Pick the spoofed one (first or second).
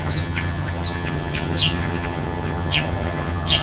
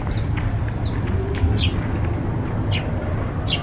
first